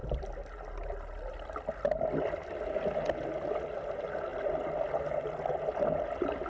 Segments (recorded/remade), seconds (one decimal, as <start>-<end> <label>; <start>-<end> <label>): 0.0-6.5 recorded